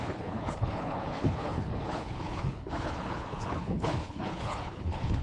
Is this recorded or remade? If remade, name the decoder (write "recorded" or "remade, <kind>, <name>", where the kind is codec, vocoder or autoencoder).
remade, codec, HILCodec